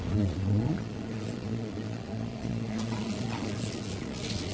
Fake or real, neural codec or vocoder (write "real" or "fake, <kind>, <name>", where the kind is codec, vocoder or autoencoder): fake, vocoder, Vocos